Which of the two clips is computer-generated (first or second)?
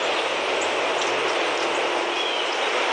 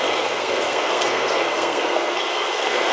second